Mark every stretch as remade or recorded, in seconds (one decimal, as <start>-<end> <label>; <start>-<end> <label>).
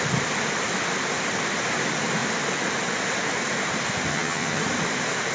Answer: 0.0-4.1 recorded; 4.1-4.6 remade; 4.6-5.3 recorded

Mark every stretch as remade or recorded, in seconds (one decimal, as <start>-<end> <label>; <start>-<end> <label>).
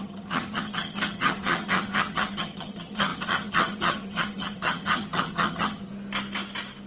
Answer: 0.0-5.9 remade; 5.9-6.9 recorded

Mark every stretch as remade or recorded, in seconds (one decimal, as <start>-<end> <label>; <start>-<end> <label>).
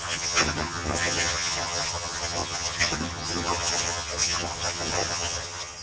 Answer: 0.0-5.8 remade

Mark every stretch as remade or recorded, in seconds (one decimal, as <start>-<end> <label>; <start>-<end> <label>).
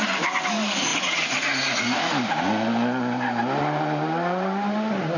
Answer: 0.0-5.2 recorded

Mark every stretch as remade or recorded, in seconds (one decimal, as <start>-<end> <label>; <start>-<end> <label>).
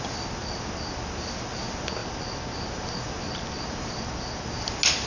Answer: 0.0-5.1 recorded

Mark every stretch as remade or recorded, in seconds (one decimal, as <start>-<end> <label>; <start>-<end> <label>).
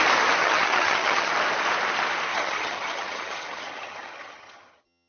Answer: 0.0-0.4 recorded; 0.4-1.3 remade; 1.3-2.3 recorded; 2.3-5.1 remade